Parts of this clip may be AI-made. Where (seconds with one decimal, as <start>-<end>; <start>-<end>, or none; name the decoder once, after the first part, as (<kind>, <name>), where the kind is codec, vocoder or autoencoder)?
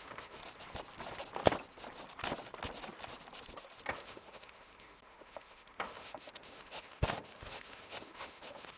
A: 0.0-0.4 (autoencoder, DAC-VAE); 3.9-8.8